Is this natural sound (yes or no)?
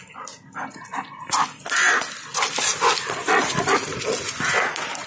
yes